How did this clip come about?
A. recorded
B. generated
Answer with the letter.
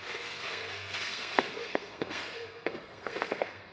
B